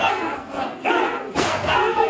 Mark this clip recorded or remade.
remade